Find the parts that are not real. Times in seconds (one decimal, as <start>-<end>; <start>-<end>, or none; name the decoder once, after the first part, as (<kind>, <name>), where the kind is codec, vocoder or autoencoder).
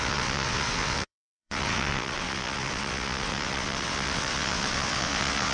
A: 0.0-5.5 (vocoder, WaveNeXt)